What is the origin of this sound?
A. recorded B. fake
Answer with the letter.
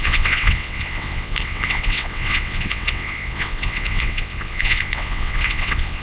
B